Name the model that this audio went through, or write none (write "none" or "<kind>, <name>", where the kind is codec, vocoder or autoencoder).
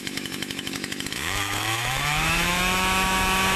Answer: autoencoder, DAC-VAE